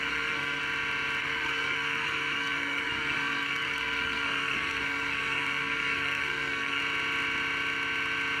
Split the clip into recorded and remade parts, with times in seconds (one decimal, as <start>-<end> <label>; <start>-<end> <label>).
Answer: 0.0-0.6 remade; 0.6-1.2 recorded; 1.2-6.8 remade; 6.8-8.4 recorded